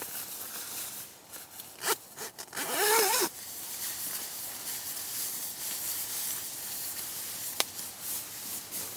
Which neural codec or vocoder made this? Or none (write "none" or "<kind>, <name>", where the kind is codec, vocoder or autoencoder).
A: vocoder, BigVGAN v2